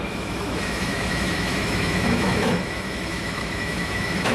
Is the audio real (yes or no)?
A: no